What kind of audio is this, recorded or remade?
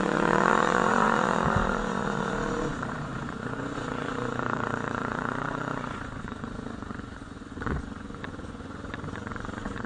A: remade